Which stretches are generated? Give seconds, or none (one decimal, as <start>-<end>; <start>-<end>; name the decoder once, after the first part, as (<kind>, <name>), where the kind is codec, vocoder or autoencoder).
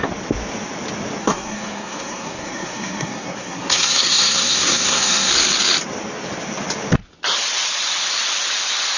1.2-5.3 (codec, SNAC)